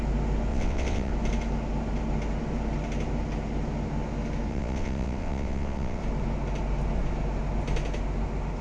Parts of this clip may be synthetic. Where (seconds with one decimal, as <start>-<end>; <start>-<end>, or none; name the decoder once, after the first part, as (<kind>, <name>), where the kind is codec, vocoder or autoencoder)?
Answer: 0.5-1.1 (vocoder, WaveNeXt); 4.5-6.0